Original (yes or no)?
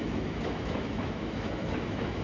no